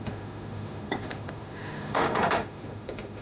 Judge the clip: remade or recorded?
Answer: remade